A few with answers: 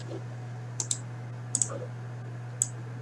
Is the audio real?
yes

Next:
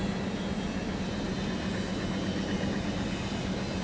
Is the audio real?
yes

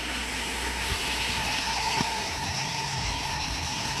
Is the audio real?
no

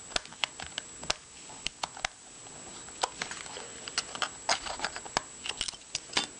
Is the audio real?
yes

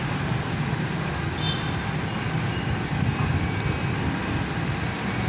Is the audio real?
yes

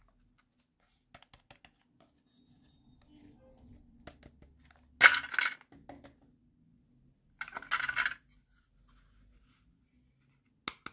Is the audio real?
yes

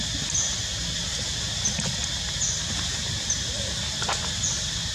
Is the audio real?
yes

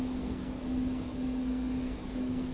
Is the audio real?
no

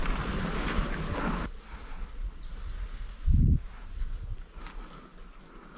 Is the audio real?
yes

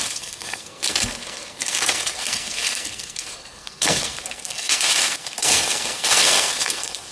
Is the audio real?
no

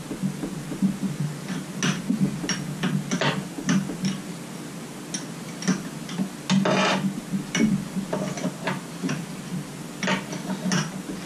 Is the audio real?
yes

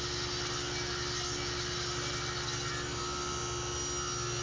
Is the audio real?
yes